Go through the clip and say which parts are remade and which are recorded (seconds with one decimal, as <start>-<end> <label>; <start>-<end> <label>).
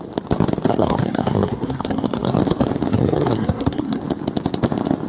0.0-0.7 recorded; 0.7-2.4 remade; 2.4-2.9 recorded; 2.9-4.0 remade; 4.0-5.1 recorded